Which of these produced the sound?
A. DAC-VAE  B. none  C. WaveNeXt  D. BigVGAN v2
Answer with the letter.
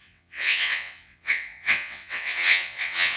C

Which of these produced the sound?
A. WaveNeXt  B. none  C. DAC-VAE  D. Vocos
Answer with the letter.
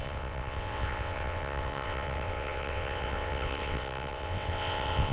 A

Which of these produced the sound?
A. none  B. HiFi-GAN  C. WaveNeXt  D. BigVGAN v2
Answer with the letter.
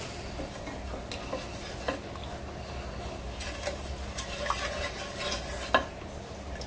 A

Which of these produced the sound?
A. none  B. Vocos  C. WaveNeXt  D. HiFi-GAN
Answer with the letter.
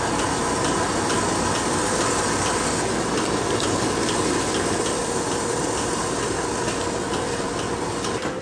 A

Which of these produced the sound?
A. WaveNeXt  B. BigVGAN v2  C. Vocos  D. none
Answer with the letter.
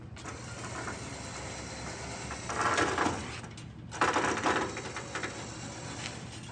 D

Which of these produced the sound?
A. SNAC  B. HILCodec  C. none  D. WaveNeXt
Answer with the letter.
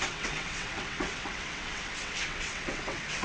D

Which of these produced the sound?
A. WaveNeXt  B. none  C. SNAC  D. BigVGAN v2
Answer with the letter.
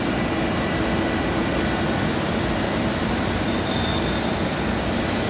B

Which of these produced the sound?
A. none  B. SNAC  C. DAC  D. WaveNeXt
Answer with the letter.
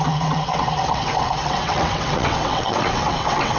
D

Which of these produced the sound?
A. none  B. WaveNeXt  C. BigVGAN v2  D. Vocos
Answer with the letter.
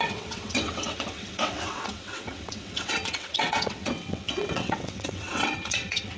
B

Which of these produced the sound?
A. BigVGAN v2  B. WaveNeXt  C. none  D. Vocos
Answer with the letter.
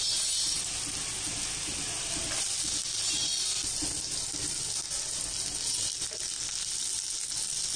C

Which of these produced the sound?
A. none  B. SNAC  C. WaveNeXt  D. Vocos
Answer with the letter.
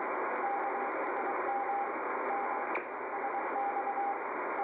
A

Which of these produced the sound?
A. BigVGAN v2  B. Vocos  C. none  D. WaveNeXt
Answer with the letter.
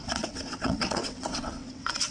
D